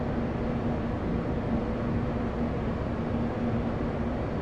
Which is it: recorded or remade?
recorded